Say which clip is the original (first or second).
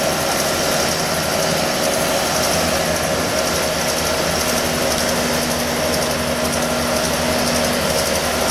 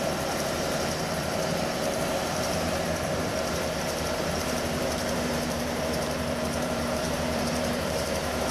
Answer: first